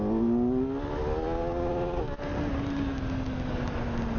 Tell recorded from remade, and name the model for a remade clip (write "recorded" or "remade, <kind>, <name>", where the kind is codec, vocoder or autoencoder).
recorded